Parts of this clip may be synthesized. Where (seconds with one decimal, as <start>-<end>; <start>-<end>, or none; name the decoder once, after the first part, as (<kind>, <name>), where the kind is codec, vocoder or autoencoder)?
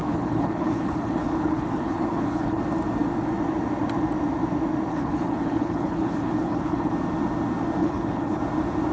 0.0-2.6 (codec, HILCodec); 4.9-6.9; 7.8-8.4